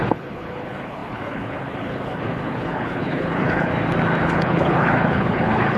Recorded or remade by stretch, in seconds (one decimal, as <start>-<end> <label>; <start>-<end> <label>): 0.0-3.7 remade; 3.7-4.2 recorded; 4.2-5.8 remade